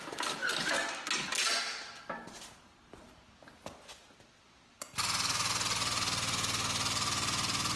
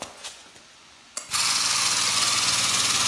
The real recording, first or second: first